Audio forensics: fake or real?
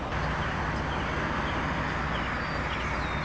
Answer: real